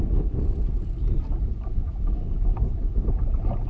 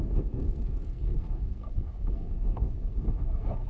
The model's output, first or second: second